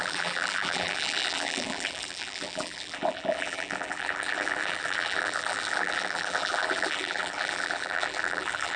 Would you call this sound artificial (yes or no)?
yes